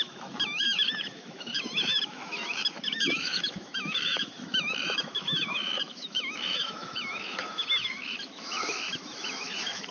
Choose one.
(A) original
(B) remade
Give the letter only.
B